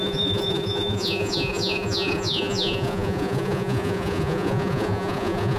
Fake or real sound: fake